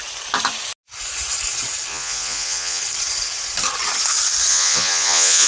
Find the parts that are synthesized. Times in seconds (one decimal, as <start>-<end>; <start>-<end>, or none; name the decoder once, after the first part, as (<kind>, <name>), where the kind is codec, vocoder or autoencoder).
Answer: 1.9-2.8 (vocoder, Vocos); 4.5-5.5